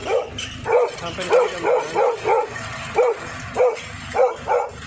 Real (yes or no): yes